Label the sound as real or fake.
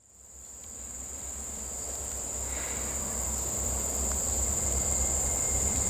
fake